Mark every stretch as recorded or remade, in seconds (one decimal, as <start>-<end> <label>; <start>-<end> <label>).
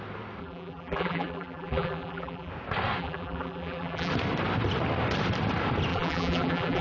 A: 0.0-0.4 recorded; 0.4-2.5 remade; 2.5-3.0 recorded; 3.0-4.1 remade; 4.1-5.9 recorded; 5.9-6.8 remade